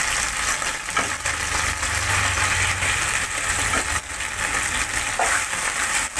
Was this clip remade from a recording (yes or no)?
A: no